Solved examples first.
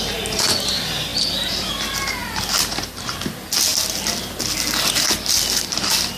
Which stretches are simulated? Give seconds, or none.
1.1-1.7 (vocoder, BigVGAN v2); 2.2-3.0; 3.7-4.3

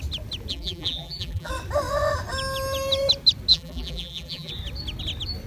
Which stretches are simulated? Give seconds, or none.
0.5-1.5 (vocoder, BigVGAN v2); 3.5-4.5

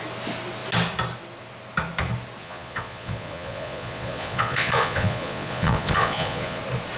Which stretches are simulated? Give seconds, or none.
2.4-6.6 (vocoder, Vocos)

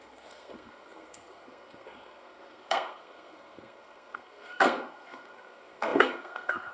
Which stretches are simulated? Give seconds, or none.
0.0-6.7 (codec, SNAC)

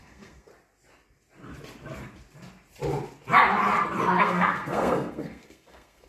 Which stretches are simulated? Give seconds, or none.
0.0-0.5 (codec, SNAC); 4.2-6.1